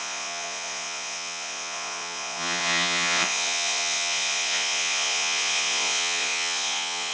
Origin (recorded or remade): remade